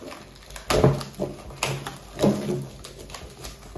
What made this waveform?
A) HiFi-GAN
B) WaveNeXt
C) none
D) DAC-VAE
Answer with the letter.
C